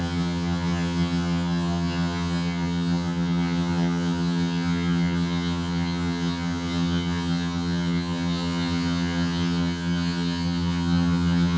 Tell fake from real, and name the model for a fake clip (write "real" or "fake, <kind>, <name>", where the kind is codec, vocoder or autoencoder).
fake, vocoder, HiFi-GAN